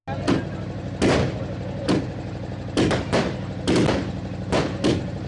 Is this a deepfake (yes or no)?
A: no